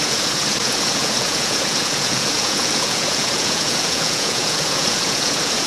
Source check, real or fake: fake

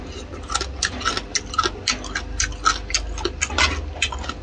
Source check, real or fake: real